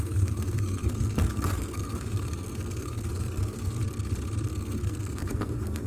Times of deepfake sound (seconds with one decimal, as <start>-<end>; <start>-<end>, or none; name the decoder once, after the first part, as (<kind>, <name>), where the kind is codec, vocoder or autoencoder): 0.0-3.8 (codec, SNAC); 4.5-5.9